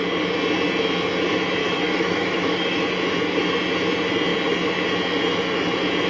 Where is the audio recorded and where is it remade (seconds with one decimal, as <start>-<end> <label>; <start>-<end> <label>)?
0.0-1.6 recorded; 1.6-2.8 remade; 2.8-6.1 recorded